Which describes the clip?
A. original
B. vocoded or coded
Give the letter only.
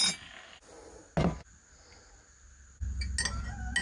A